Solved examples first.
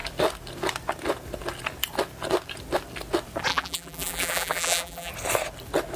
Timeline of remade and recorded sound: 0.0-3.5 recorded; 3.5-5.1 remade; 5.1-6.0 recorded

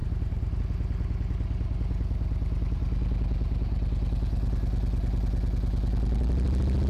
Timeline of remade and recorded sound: 0.0-0.6 remade; 0.6-6.9 recorded

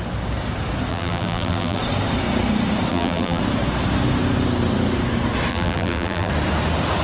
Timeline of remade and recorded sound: 0.0-0.9 recorded; 0.9-1.8 remade; 1.8-2.9 recorded; 2.9-3.4 remade; 3.4-5.5 recorded; 5.5-6.3 remade; 6.3-7.0 recorded

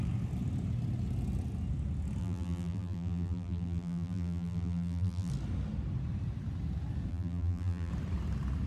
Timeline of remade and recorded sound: 0.0-2.2 recorded; 2.2-5.3 remade; 5.3-7.1 recorded; 7.1-7.9 remade; 7.9-8.7 recorded

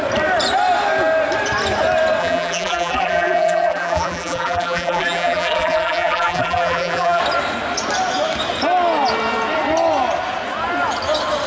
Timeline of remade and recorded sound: 0.0-2.2 recorded; 2.2-7.2 remade; 7.2-11.5 recorded

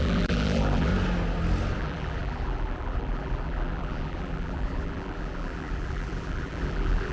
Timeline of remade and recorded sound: 0.0-0.9 remade; 0.9-1.8 recorded; 1.8-7.1 remade